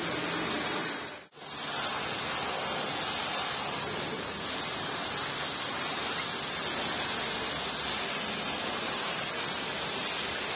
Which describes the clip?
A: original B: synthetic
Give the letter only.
A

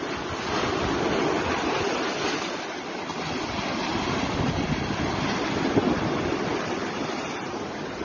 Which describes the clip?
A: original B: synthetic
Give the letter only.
A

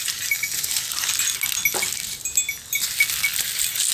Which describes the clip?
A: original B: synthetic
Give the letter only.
A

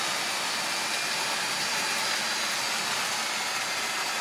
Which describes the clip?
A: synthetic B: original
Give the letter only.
B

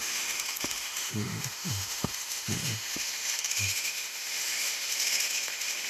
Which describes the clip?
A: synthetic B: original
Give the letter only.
A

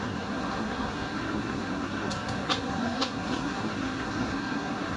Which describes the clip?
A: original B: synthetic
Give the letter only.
B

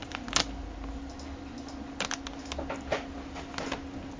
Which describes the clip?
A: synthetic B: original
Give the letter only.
B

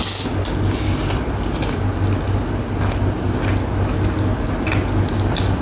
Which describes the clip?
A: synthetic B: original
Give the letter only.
B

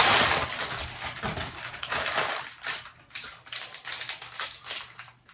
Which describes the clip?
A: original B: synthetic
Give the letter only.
A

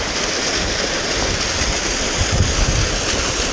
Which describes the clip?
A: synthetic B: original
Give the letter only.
B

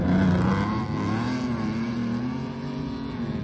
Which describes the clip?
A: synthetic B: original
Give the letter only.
B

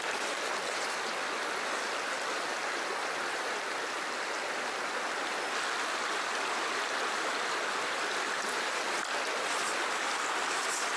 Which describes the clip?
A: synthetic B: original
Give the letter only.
B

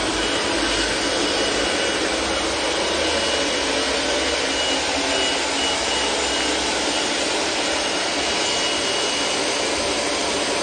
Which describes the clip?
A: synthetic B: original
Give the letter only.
B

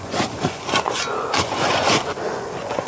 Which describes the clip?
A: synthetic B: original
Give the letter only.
A